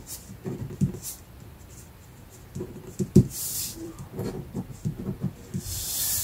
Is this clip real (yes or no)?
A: no